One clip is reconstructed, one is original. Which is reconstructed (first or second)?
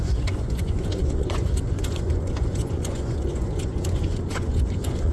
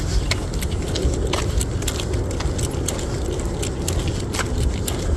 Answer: first